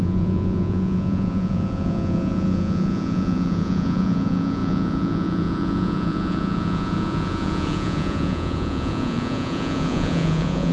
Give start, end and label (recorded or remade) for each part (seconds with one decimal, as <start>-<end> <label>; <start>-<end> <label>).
0.0-10.7 remade